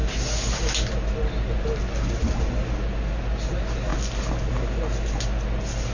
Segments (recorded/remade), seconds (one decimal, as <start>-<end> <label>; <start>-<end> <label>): 0.0-5.9 recorded